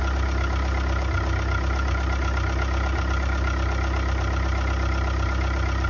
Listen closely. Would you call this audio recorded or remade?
recorded